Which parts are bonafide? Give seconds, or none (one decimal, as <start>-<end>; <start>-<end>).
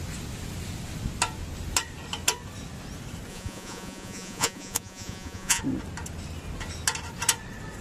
0.0-3.3; 5.6-7.8